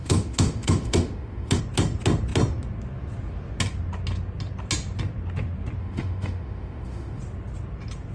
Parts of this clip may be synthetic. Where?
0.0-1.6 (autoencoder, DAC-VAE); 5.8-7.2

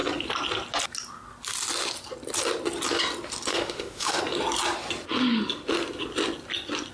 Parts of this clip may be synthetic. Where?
3.5-4.2 (autoencoder, DAC-VAE)